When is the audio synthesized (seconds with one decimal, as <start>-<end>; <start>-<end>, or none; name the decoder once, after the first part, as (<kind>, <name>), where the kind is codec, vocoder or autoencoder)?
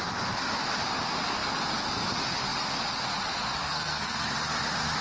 3.6-4.3 (codec, SNAC)